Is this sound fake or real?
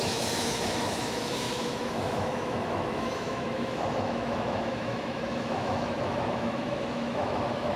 fake